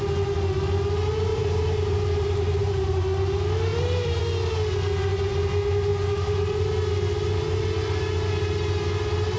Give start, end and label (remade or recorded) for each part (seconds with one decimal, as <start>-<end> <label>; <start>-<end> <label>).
0.0-1.3 recorded; 1.3-3.0 remade; 3.0-3.7 recorded; 3.7-4.2 remade; 4.2-9.4 recorded